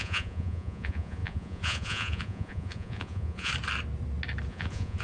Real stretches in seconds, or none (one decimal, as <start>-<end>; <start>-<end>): 3.5-4.5